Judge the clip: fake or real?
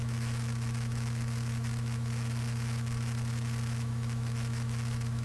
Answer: fake